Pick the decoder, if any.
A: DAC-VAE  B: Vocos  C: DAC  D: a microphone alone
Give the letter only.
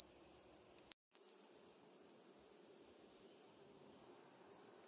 D